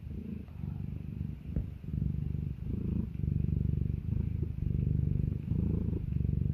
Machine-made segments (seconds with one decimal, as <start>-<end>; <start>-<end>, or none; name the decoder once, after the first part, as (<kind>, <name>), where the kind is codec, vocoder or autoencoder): 0.0-6.5 (vocoder, BigVGAN v2)